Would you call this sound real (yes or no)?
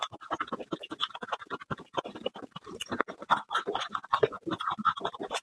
yes